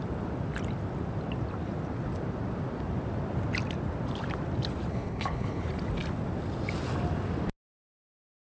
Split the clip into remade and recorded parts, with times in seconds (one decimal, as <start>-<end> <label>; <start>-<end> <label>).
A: 0.0-4.9 recorded; 4.9-5.6 remade; 5.6-8.5 recorded